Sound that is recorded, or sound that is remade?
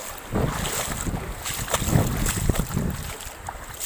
recorded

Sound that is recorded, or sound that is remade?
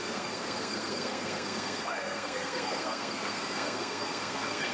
remade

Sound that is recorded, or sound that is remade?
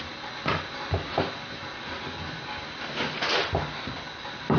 recorded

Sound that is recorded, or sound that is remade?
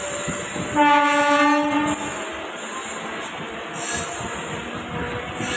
recorded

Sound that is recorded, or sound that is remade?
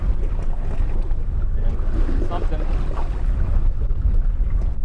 recorded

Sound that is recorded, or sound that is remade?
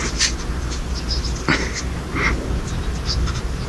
remade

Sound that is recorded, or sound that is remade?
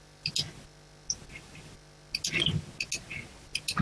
recorded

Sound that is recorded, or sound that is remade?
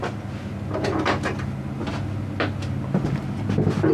recorded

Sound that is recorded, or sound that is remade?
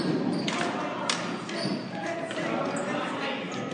recorded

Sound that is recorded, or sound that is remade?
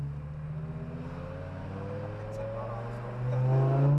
recorded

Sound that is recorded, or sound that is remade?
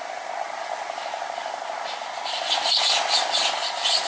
recorded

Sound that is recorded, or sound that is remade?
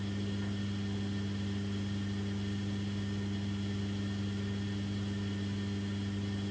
recorded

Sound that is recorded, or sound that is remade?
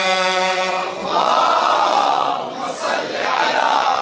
remade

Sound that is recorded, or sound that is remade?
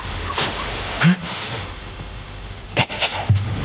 remade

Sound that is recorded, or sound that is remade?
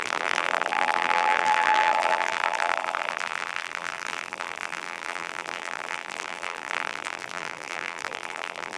remade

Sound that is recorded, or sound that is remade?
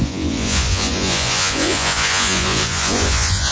remade